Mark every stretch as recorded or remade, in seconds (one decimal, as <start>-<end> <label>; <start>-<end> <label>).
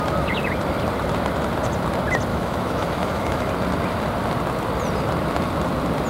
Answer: 0.0-2.3 recorded; 2.3-3.5 remade; 3.5-6.1 recorded